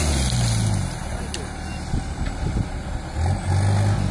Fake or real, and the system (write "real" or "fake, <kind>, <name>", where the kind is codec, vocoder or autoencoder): real